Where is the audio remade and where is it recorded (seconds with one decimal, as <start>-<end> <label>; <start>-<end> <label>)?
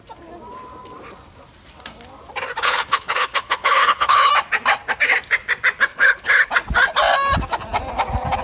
0.0-2.6 recorded; 2.6-4.3 remade; 4.3-5.9 recorded; 5.9-6.5 remade; 6.5-8.4 recorded